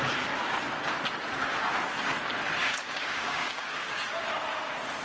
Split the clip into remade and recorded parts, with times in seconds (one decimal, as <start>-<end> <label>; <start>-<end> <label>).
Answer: 0.0-2.6 recorded; 2.6-4.0 remade; 4.0-5.0 recorded